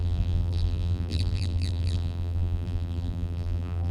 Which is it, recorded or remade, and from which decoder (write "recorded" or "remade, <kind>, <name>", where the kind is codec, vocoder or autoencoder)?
remade, vocoder, BigVGAN v2